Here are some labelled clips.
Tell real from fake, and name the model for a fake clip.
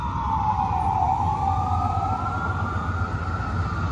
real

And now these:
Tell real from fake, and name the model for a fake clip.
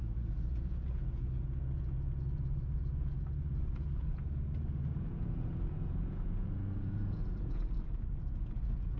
fake, vocoder, Vocos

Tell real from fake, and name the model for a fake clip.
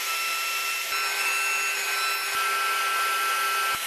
real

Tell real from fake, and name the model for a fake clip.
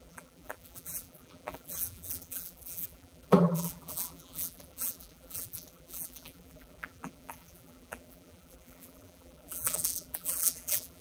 fake, vocoder, BigVGAN v2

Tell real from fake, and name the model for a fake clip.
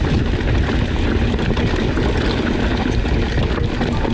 real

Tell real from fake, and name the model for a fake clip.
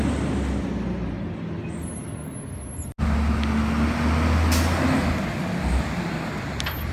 real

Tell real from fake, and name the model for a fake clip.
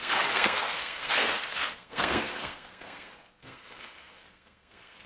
fake, codec, SNAC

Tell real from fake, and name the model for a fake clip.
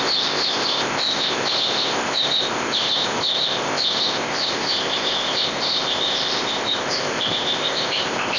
fake, codec, ZipCodec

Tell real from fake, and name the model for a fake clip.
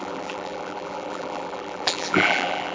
fake, vocoder, BigVGAN v2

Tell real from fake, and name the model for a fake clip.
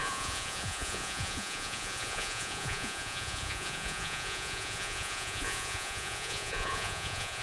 fake, vocoder, Vocos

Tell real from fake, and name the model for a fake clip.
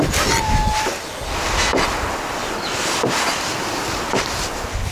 real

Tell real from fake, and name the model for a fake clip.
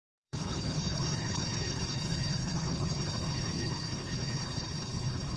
fake, codec, HILCodec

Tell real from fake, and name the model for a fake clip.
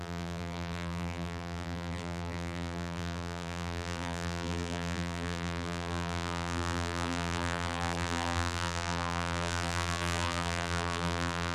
fake, vocoder, BigVGAN v2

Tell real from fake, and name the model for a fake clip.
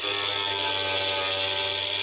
real